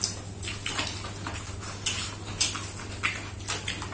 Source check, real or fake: real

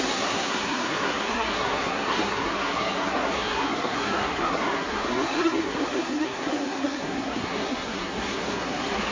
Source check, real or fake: fake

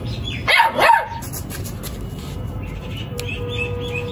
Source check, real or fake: real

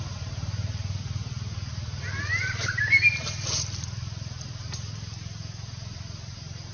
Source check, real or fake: real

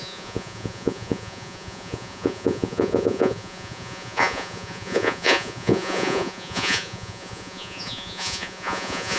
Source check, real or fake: fake